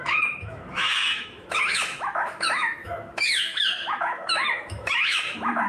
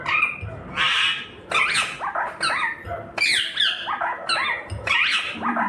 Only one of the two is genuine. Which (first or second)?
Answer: second